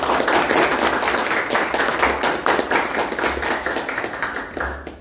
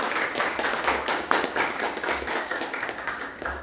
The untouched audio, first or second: first